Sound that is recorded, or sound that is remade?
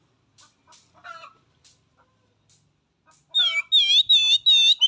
recorded